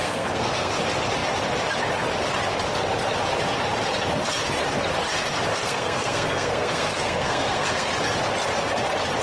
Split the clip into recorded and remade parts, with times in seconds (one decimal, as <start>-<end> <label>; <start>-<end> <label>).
0.0-0.7 remade; 0.7-5.5 recorded; 5.5-7.9 remade; 7.9-9.2 recorded